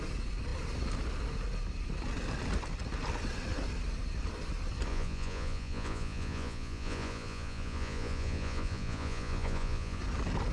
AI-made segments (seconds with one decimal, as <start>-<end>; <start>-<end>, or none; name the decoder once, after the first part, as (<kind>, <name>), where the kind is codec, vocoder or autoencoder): 4.9-10.0 (vocoder, Vocos)